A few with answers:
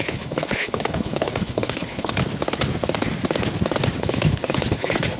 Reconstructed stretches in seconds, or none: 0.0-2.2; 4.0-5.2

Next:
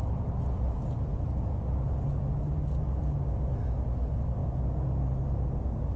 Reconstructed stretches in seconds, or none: none

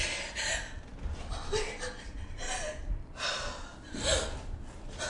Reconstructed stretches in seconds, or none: none

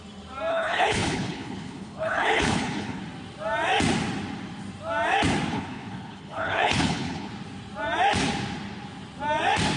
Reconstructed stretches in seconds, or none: 0.5-3.0; 5.5-7.3

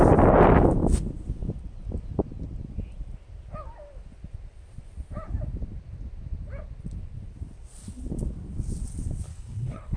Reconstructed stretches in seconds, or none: 9.3-10.0